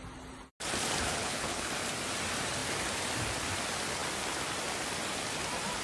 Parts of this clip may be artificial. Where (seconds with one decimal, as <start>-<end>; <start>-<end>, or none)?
1.2-1.7